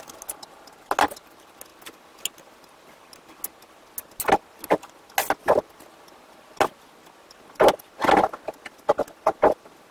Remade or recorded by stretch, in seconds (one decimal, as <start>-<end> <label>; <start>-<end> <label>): 0.0-9.9 recorded